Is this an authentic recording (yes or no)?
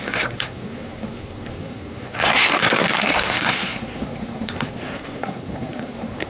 no